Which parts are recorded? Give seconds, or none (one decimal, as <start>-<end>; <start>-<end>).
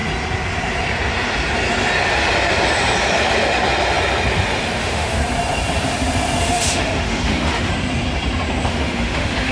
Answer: 0.0-4.8; 5.2-6.4; 7.7-8.7